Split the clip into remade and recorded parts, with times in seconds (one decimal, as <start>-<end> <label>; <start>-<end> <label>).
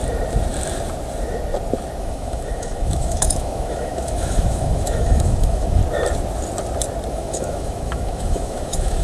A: 0.0-2.0 recorded; 2.0-5.8 remade; 5.8-7.1 recorded; 7.1-9.0 remade